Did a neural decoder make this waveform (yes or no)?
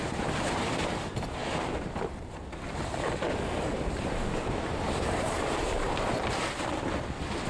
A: no